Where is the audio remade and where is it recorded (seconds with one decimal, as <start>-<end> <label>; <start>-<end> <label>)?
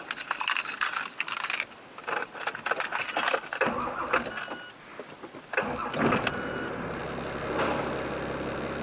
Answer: 0.0-8.8 recorded